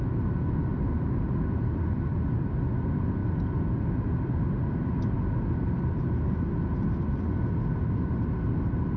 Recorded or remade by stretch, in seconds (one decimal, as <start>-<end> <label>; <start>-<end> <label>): 0.0-9.0 recorded